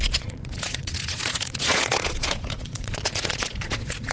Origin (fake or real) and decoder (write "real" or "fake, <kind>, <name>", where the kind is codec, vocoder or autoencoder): fake, vocoder, Vocos